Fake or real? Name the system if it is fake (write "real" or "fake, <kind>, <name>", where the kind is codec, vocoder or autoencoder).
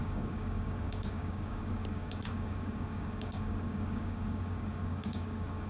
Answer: fake, codec, DAC